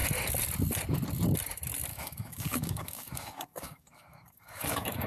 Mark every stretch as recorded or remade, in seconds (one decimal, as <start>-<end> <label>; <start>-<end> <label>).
0.0-1.9 recorded; 1.9-5.1 remade